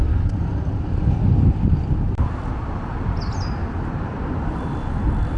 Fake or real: real